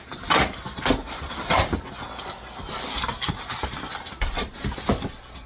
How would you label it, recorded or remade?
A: recorded